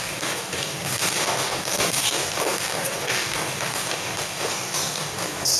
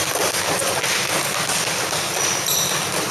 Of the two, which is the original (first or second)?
second